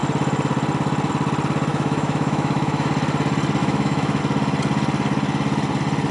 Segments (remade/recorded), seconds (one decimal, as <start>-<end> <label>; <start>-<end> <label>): 0.0-1.7 recorded; 1.7-2.9 remade; 2.9-3.6 recorded; 3.6-4.2 remade; 4.2-6.1 recorded